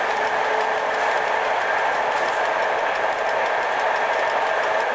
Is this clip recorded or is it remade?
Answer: recorded